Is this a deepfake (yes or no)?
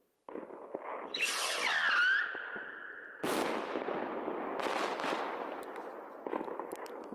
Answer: no